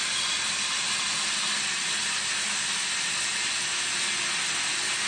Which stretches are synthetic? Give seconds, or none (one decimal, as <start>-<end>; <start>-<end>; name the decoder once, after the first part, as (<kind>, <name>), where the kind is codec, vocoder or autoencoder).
none